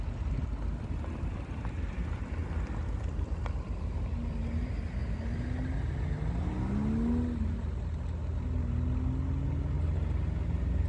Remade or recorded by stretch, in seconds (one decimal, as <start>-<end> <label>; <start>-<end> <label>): 0.0-10.9 recorded